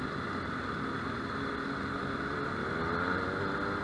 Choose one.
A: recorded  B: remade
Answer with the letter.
A